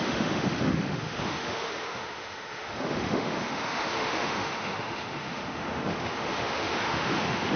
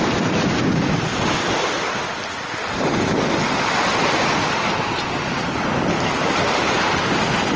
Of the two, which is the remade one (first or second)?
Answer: first